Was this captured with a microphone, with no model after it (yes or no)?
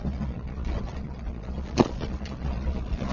no